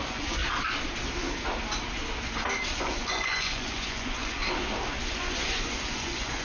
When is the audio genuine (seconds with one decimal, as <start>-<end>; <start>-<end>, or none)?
0.4-2.8; 4.4-5.0